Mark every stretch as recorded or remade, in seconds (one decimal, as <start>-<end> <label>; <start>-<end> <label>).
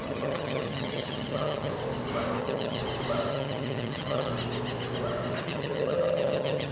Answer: 0.0-1.7 remade; 1.7-2.4 recorded; 2.4-2.8 remade; 2.8-3.3 recorded; 3.3-4.3 remade; 4.3-5.4 recorded; 5.4-6.7 remade